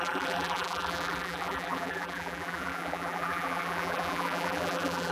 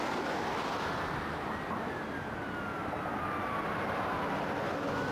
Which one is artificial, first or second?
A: first